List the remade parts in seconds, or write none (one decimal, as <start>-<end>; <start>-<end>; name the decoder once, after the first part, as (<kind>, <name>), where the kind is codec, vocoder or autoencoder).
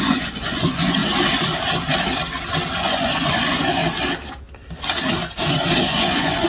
0.0-1.0 (vocoder, Vocos); 2.7-3.8; 5.3-6.5